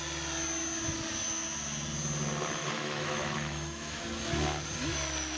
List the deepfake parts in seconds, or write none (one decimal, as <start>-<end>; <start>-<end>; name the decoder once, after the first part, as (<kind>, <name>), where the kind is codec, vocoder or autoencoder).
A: 2.6-4.0 (autoencoder, DAC-VAE)

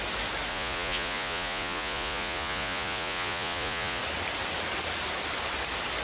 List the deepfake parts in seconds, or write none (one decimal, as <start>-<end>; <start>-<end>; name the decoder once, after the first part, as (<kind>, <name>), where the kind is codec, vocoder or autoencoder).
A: 0.5-4.0 (vocoder, Vocos)

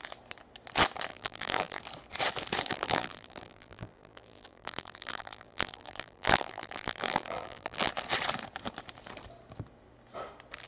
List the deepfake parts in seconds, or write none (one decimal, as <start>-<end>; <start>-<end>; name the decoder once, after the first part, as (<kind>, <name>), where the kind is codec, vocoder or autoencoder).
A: 1.1-1.8 (vocoder, BigVGAN v2); 2.7-7.9

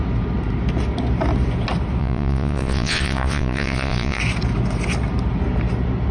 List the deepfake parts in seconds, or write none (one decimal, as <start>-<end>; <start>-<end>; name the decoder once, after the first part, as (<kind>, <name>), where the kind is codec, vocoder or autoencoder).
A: 2.0-4.2 (vocoder, Vocos)

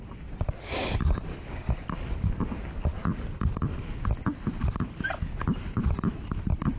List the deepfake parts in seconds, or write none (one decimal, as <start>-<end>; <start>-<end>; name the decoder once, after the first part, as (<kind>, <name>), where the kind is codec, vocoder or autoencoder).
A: none

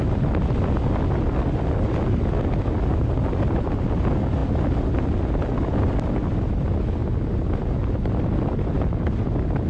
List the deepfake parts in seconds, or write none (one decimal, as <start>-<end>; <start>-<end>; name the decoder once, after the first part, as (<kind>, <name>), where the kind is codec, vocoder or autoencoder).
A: none

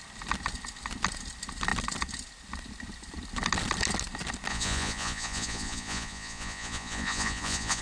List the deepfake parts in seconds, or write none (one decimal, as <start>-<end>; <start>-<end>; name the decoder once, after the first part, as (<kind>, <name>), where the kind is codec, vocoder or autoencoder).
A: 4.5-7.8 (vocoder, Vocos)

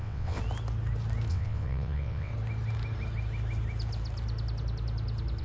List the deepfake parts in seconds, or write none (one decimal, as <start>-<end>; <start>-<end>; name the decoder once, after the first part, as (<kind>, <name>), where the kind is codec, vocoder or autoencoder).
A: 0.0-0.4 (vocoder, WaveNeXt); 1.3-2.3